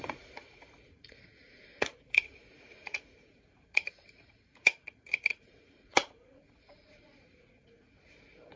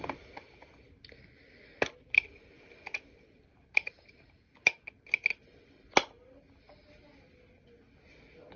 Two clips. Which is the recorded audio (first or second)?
second